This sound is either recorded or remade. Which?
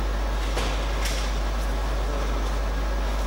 recorded